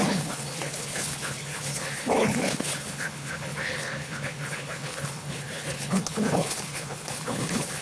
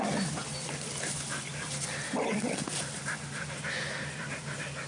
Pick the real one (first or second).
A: second